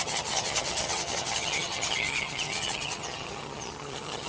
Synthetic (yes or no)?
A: yes